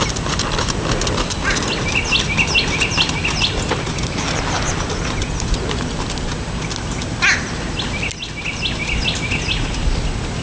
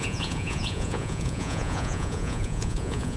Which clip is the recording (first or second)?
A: first